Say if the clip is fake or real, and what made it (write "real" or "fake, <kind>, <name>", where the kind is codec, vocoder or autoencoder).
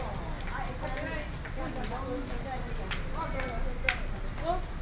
real